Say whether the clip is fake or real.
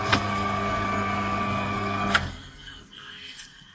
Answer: fake